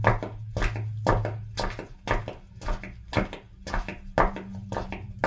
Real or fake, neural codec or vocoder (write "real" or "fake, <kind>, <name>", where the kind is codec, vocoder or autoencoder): real